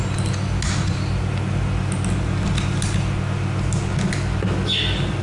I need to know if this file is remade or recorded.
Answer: recorded